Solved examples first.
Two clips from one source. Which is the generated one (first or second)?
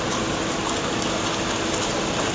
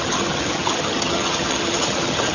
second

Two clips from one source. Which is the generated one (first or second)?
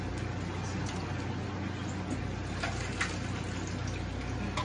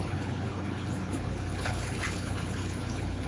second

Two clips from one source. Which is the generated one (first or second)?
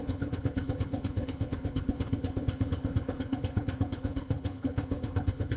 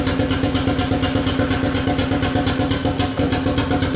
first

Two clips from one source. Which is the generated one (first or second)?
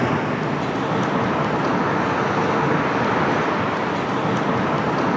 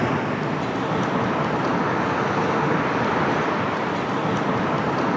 second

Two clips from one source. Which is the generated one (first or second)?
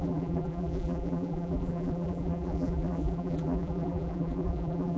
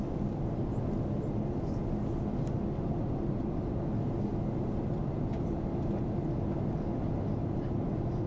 first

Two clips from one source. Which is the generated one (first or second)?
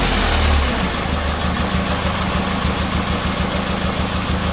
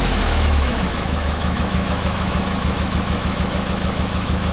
second